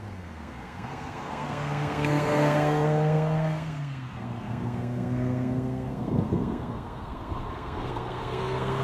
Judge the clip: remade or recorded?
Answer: remade